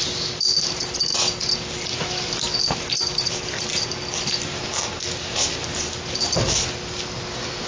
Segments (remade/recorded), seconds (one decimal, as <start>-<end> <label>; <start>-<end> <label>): 0.0-5.3 recorded; 5.3-6.3 remade; 6.3-7.7 recorded